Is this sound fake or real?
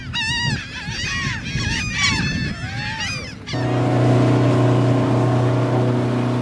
real